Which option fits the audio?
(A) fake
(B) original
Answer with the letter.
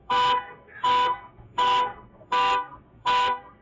A